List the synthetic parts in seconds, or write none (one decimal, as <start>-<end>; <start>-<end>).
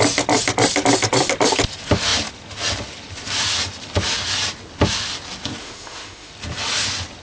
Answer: 5.6-6.3